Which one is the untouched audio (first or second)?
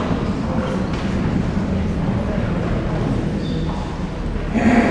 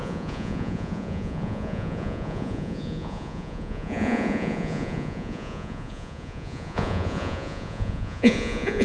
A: first